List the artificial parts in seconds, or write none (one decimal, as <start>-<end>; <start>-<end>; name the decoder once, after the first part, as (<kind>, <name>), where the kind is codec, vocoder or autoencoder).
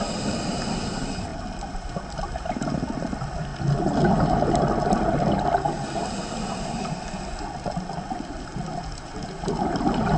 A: 0.0-1.3 (vocoder, BigVGAN v2); 2.0-3.5; 6.9-10.2